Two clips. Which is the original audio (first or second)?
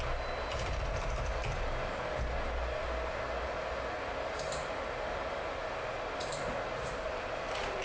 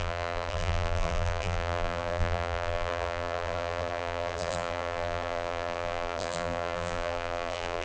first